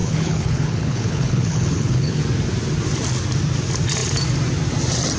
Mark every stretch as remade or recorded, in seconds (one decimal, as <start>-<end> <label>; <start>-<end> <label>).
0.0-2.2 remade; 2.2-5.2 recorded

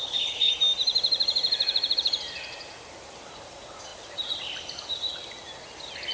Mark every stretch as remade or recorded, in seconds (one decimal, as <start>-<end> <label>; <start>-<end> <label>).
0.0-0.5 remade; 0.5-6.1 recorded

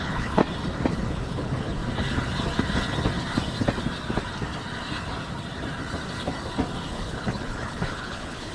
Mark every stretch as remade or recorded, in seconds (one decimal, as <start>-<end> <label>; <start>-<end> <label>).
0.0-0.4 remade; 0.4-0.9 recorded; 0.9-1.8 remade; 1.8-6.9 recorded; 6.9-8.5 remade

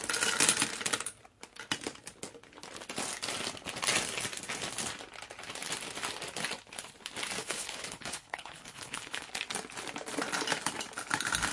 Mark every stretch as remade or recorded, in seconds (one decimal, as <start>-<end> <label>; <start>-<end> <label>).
0.0-7.4 recorded; 7.4-9.3 remade; 9.3-11.5 recorded

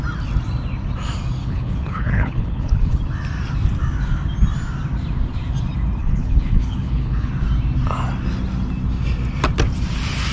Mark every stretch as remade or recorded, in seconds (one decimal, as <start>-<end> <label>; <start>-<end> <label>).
0.0-1.4 recorded; 1.4-3.0 remade; 3.0-6.0 recorded; 6.0-7.3 remade; 7.3-10.3 recorded

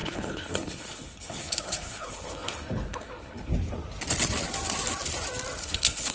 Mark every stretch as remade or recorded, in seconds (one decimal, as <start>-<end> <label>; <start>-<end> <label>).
0.0-3.5 remade; 3.5-5.6 recorded; 5.6-6.1 remade